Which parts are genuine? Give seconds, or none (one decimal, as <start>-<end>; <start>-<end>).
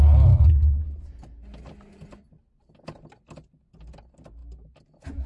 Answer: 0.8-5.3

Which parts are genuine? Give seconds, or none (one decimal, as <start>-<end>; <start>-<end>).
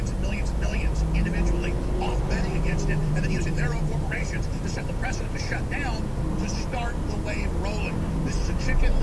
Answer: 0.0-2.5; 5.6-9.0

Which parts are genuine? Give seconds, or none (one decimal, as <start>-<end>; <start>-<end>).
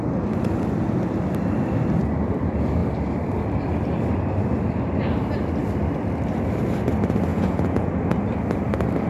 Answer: 0.0-7.3; 7.9-9.1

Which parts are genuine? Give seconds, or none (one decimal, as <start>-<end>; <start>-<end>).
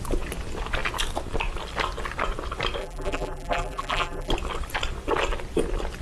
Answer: 0.0-2.8; 4.3-6.0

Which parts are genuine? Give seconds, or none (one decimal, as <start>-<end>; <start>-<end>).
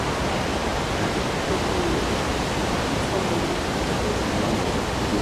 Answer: 0.0-5.2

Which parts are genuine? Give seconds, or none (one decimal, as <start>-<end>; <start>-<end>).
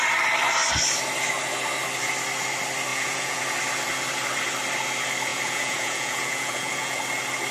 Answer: 0.0-2.9; 3.4-5.3; 7.0-7.5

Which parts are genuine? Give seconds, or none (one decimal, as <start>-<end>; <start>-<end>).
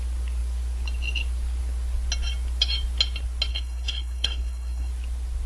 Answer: 0.0-3.5; 4.9-5.5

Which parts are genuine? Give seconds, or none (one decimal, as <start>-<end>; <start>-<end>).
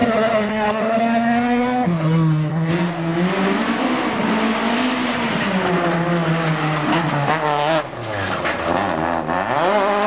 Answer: 2.7-10.1